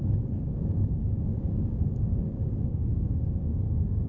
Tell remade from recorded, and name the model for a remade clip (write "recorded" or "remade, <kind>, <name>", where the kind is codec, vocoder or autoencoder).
remade, codec, DAC